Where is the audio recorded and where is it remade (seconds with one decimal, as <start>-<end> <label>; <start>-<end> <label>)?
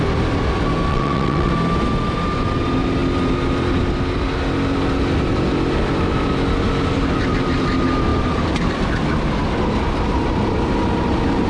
0.0-0.9 recorded; 0.9-1.5 remade; 1.5-11.5 recorded